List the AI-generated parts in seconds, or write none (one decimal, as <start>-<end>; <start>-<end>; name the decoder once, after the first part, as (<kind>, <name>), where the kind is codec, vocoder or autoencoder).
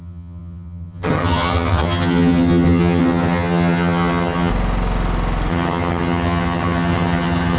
0.0-4.5 (vocoder, HiFi-GAN); 5.5-7.6